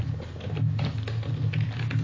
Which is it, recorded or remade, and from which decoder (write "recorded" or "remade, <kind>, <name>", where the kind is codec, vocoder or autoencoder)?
recorded